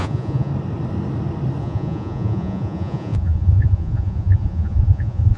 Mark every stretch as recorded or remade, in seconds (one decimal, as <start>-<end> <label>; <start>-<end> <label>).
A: 0.0-0.5 remade; 0.5-1.6 recorded; 1.6-5.4 remade